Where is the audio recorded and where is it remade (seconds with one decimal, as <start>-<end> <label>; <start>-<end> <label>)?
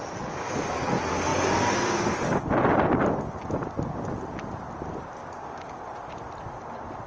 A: 0.0-5.2 recorded; 5.2-5.8 remade; 5.8-7.1 recorded